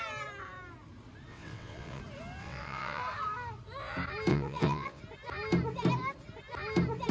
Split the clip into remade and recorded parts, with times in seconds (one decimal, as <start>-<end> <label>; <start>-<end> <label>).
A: 0.0-1.3 recorded; 1.3-2.0 remade; 2.0-2.4 recorded; 2.4-3.0 remade; 3.0-4.3 recorded; 4.3-5.0 remade; 5.0-7.1 recorded

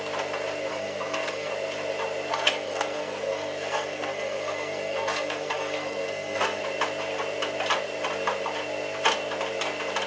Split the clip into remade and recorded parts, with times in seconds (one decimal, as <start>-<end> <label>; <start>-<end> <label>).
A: 0.0-0.7 recorded; 0.7-1.5 remade; 1.5-2.3 recorded; 2.3-6.6 remade; 6.6-10.1 recorded

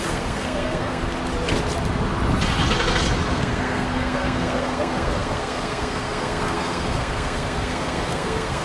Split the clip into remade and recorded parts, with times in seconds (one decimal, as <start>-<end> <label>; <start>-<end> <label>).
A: 0.0-1.0 remade; 1.0-3.3 recorded; 3.3-8.6 remade

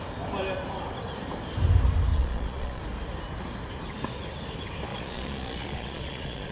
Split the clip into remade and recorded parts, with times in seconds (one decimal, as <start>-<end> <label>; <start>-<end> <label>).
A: 0.0-2.1 recorded; 2.1-2.8 remade; 2.8-4.9 recorded; 4.9-6.5 remade

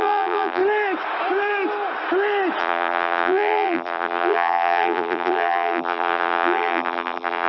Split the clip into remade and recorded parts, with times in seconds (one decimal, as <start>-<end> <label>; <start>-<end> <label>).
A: 0.0-0.6 remade; 0.6-2.6 recorded; 2.6-7.5 remade